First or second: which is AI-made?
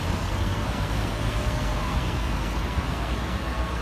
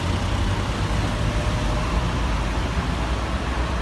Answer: first